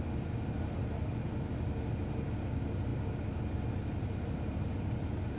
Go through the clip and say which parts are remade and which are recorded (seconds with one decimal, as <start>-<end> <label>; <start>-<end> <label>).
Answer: 0.0-5.4 recorded